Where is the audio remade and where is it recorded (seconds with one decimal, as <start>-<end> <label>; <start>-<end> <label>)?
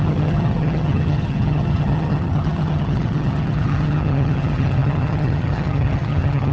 0.0-6.5 remade